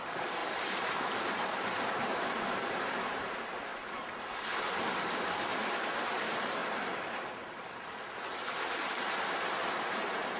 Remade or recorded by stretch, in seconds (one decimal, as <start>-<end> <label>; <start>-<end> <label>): 0.0-6.6 remade; 6.6-9.9 recorded; 9.9-10.4 remade